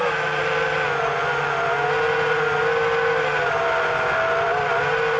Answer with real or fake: real